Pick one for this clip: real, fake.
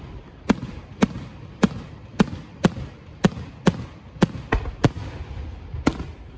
real